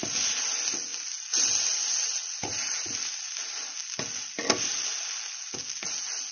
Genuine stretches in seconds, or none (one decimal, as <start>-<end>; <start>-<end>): 0.0-6.3